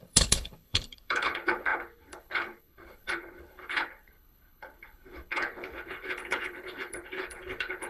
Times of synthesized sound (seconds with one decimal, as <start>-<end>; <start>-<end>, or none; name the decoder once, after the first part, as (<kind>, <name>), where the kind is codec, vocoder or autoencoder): 0.0-7.9 (codec, HILCodec)